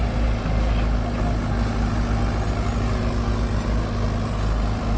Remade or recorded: recorded